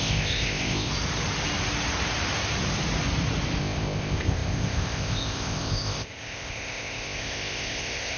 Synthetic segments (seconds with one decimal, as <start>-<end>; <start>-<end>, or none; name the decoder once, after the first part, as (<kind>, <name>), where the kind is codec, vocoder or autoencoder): 0.0-0.9 (codec, ZipCodec); 3.6-8.2